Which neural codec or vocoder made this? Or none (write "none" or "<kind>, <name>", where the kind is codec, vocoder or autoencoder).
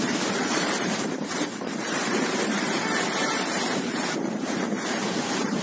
vocoder, BigVGAN v2